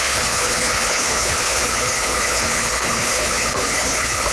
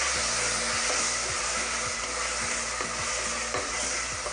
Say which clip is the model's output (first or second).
first